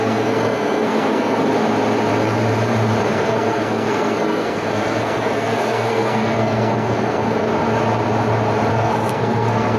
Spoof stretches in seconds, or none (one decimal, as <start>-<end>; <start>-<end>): 0.0-1.5; 3.0-7.5; 8.7-9.8